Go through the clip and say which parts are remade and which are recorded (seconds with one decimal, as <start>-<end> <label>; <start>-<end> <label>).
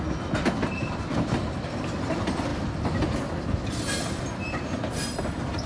0.0-5.7 recorded